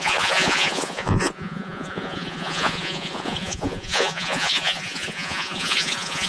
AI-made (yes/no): yes